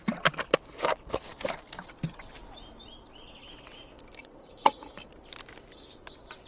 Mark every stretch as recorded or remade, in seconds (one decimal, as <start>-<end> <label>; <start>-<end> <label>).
0.0-4.2 recorded; 4.2-5.0 remade; 5.0-6.5 recorded